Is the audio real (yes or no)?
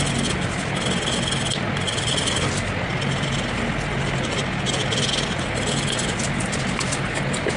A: yes